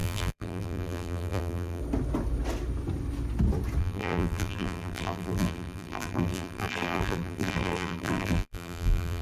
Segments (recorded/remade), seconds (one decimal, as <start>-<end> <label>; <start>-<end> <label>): 0.0-1.8 remade; 1.8-3.8 recorded; 3.8-9.2 remade